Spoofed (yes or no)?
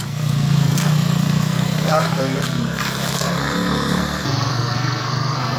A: yes